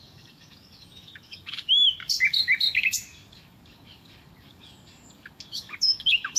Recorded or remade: remade